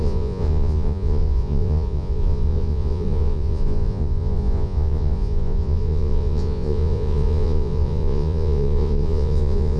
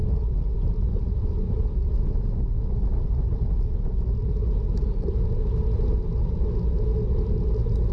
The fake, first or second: first